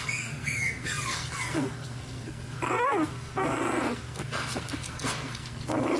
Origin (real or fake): fake